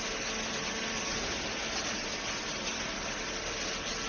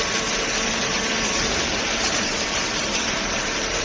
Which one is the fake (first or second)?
second